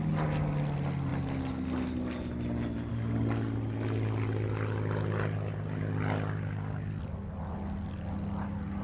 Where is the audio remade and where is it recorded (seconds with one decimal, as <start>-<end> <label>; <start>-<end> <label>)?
0.0-8.8 recorded